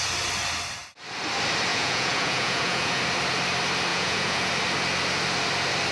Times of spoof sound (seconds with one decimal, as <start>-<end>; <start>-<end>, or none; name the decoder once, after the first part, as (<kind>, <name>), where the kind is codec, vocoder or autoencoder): 1.7-3.0 (vocoder, Vocos); 3.9-4.5